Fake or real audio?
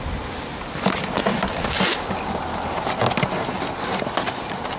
real